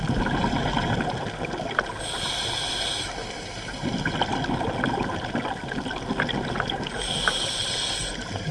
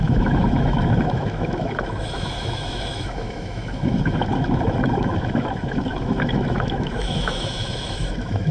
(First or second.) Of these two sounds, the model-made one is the second